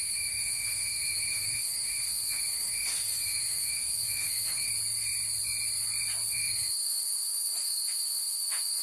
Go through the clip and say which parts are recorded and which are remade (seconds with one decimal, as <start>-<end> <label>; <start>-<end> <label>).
0.0-4.7 remade; 4.7-6.3 recorded; 6.3-8.8 remade